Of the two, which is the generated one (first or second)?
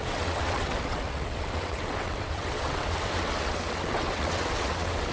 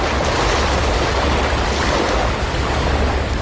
first